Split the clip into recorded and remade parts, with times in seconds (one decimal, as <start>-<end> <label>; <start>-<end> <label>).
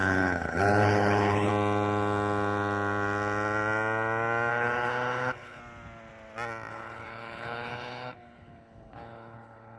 0.0-1.5 remade; 1.5-4.5 recorded; 4.5-5.6 remade; 5.6-6.7 recorded; 6.7-9.8 remade